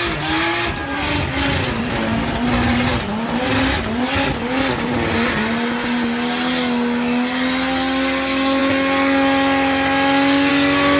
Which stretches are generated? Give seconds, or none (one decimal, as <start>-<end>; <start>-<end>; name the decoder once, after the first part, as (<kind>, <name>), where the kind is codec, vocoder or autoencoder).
none